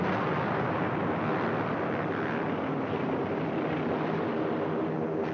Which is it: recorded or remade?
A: recorded